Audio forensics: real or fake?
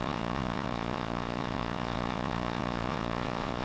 fake